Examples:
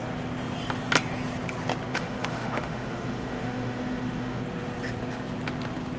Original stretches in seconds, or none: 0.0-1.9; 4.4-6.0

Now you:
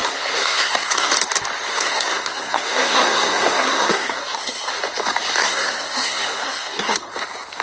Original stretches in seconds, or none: 1.1-1.7; 4.7-5.4; 7.1-7.6

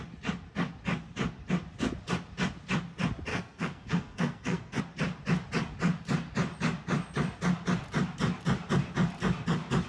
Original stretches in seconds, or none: 0.0-3.3; 4.8-9.9